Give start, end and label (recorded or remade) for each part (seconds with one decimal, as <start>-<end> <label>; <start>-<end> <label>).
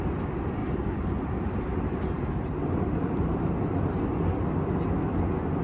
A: 0.0-0.6 recorded; 0.6-4.0 remade; 4.0-5.6 recorded